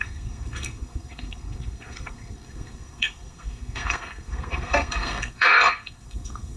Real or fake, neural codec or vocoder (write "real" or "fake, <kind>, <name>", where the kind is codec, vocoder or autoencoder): fake, codec, SNAC